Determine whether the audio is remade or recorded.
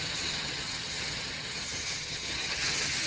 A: remade